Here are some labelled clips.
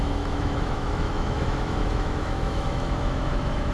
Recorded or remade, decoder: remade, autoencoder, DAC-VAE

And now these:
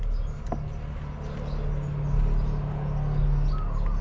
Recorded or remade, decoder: recorded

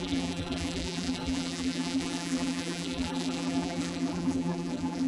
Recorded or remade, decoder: remade, vocoder, BigVGAN v2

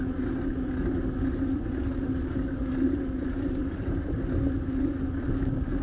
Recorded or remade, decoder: recorded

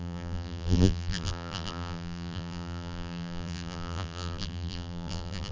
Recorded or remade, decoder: remade, vocoder, BigVGAN v2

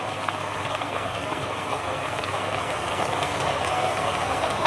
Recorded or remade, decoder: remade, codec, SNAC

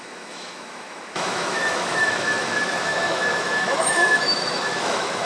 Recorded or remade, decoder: remade, autoencoder, DAC-VAE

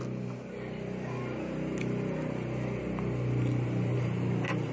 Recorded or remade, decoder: recorded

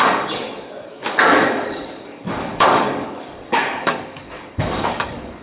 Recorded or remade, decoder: remade, codec, DAC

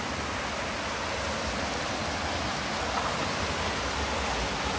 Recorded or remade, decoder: recorded